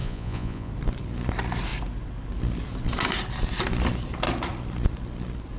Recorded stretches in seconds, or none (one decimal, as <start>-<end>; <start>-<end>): 0.7-5.6